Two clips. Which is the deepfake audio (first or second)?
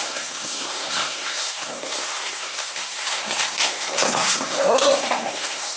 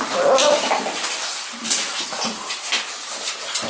first